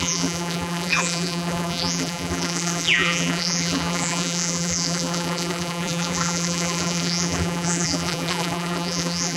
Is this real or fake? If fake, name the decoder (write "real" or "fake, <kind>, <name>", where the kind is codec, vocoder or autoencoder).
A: fake, vocoder, BigVGAN v2